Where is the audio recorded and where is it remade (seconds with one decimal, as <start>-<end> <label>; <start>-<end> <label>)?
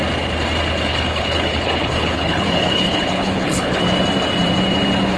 0.0-0.9 recorded; 0.9-3.8 remade; 3.8-5.2 recorded